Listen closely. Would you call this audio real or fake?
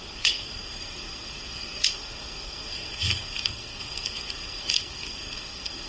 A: fake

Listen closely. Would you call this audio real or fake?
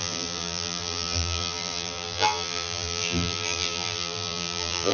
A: fake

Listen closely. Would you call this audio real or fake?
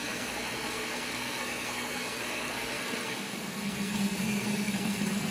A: fake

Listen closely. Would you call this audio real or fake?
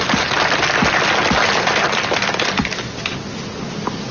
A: real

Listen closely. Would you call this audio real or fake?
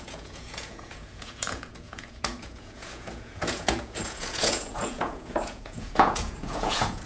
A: fake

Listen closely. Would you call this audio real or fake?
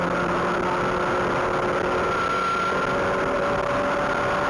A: real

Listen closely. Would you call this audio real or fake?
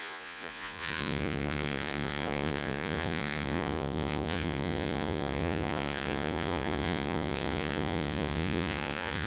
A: fake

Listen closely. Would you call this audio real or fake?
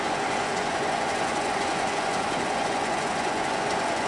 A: fake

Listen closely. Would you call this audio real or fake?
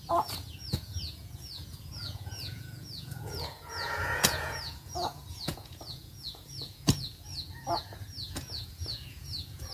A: fake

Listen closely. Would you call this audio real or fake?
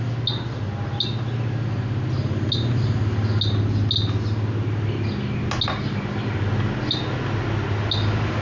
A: real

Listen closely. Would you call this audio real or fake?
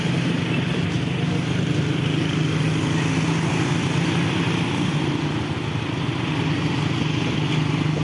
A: real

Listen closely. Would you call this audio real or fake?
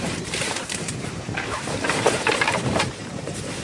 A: fake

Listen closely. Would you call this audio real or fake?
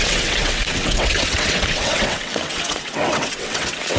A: fake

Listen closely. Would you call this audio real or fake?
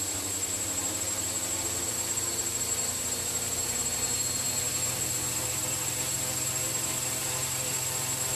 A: fake